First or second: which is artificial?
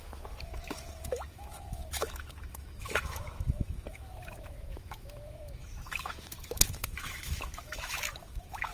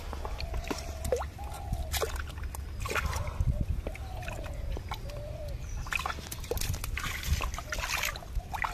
first